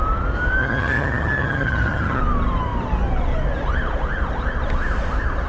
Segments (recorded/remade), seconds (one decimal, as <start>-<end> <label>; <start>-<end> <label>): 0.0-0.6 recorded; 0.6-2.2 remade; 2.2-5.5 recorded